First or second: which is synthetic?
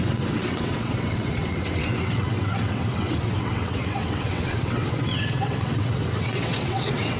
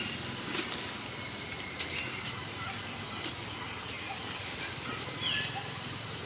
first